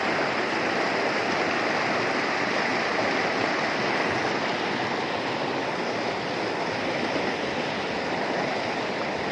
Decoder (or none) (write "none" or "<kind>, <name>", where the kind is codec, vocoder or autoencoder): none